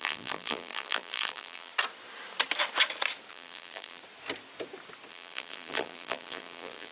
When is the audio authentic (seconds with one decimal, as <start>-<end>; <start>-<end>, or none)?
1.7-3.3; 4.0-5.1